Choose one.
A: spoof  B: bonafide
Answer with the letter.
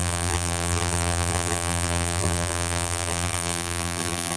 A